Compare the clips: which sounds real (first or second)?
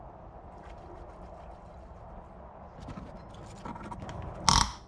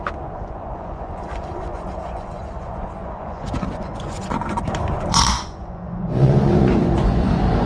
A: first